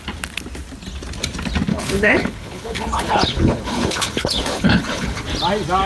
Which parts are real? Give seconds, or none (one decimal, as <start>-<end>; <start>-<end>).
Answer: 0.0-1.7; 5.2-5.9